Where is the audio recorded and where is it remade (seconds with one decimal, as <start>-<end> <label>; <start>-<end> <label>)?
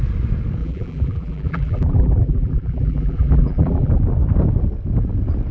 0.0-0.6 recorded; 0.6-3.9 remade; 3.9-5.5 recorded